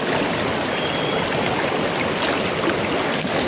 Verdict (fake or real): real